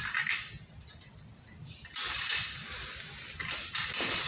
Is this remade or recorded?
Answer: recorded